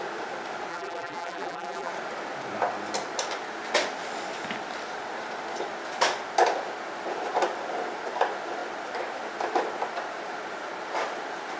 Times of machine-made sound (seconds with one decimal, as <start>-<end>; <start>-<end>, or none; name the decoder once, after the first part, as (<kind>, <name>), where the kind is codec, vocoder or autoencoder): 0.7-1.9 (vocoder, BigVGAN v2)